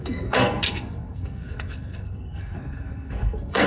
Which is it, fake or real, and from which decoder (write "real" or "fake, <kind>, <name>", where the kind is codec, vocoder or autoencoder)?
fake, codec, SNAC